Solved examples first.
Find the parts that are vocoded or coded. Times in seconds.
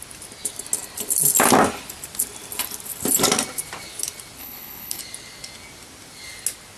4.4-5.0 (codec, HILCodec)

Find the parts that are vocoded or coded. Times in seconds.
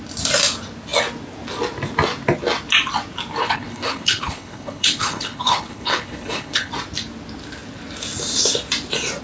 3.4-6.7 (codec, HILCodec)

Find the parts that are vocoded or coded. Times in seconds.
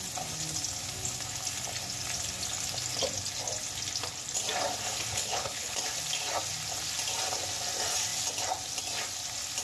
5.1-5.8 (codec, HILCodec)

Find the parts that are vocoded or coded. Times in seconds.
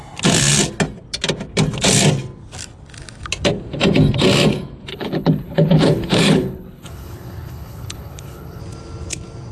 4.9-8.6 (codec, HILCodec)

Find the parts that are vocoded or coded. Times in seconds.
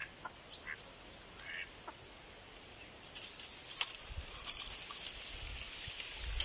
none